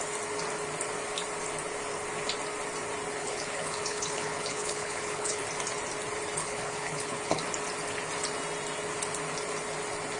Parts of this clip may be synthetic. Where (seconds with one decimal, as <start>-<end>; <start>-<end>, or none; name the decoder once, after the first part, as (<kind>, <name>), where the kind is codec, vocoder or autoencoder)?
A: 3.2-5.4 (codec, HILCodec); 6.4-7.4